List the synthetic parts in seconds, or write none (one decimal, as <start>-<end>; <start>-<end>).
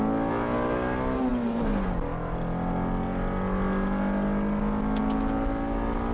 none